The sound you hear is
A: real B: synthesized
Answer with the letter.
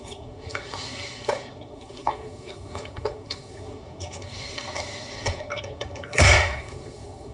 B